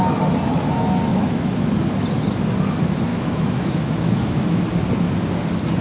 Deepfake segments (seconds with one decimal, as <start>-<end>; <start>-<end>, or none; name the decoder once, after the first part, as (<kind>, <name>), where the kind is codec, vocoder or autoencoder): 1.1-1.7 (autoencoder, DAC-VAE); 3.1-4.6